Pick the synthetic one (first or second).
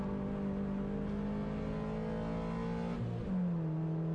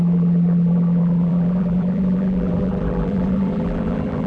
second